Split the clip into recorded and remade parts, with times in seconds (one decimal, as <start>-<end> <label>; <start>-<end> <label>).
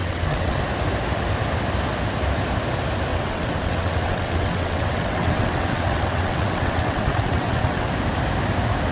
0.0-0.6 remade; 0.6-3.1 recorded; 3.1-7.9 remade; 7.9-8.9 recorded